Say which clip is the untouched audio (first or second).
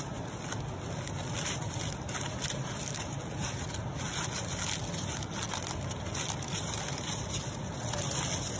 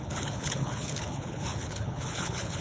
first